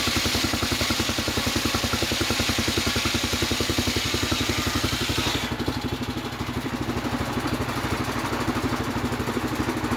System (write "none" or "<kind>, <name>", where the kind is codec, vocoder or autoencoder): none